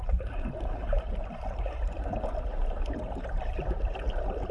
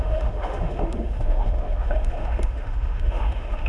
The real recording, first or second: first